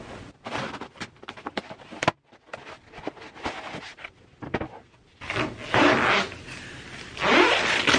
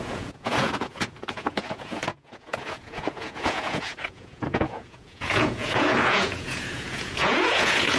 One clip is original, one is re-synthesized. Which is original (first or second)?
first